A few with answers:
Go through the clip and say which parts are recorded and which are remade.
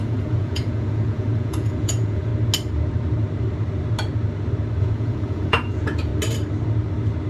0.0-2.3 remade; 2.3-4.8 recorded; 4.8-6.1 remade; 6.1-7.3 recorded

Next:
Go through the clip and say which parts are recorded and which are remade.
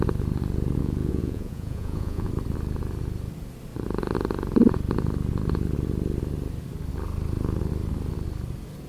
0.0-0.8 recorded; 0.8-2.3 remade; 2.3-8.9 recorded